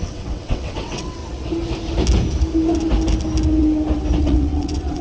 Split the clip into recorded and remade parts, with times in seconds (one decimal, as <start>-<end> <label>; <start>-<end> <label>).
0.0-1.2 remade; 1.2-4.2 recorded; 4.2-5.0 remade